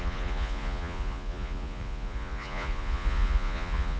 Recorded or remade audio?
remade